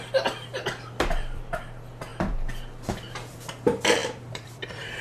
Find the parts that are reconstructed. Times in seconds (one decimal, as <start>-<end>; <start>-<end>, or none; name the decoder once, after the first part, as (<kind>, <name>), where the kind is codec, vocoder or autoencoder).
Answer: 4.0-5.0 (vocoder, BigVGAN v2)